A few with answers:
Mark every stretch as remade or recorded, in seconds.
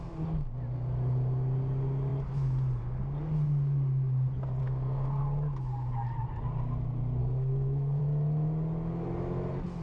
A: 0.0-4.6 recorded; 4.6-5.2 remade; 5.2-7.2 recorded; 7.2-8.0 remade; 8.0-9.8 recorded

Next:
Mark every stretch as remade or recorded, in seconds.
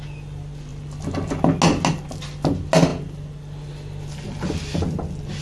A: 0.0-5.4 recorded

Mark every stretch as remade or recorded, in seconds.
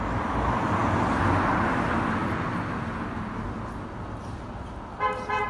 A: 0.0-5.5 recorded